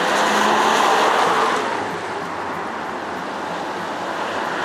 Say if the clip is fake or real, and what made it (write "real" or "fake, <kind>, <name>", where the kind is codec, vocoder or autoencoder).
real